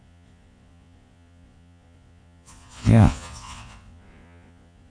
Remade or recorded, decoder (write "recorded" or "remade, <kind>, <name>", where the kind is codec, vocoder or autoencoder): remade, vocoder, Vocos